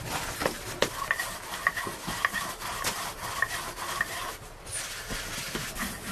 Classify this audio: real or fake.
real